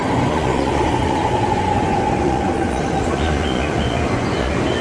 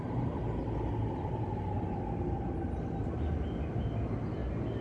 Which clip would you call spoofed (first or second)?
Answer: first